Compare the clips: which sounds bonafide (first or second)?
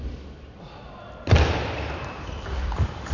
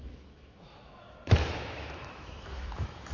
first